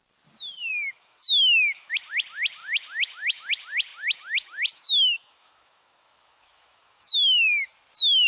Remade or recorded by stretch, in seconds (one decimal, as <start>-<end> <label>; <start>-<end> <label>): 0.0-0.7 recorded; 0.7-2.1 remade; 2.1-2.6 recorded; 2.6-3.5 remade; 3.5-3.9 recorded; 3.9-7.7 remade; 7.7-8.3 recorded